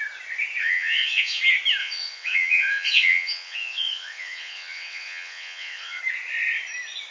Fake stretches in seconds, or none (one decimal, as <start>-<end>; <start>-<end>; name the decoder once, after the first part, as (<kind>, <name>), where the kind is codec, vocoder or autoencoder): 0.6-1.4 (vocoder, WaveNeXt); 1.8-6.0